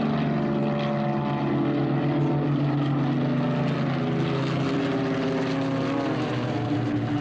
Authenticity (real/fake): real